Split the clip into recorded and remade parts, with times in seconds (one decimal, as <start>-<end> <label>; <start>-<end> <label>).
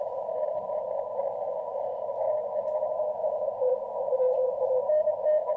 0.0-3.2 recorded; 3.2-4.8 remade; 4.8-5.6 recorded